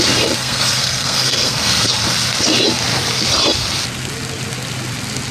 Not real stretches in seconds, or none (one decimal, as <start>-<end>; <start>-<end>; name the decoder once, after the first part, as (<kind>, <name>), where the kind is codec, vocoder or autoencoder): 0.4-2.0 (codec, SNAC)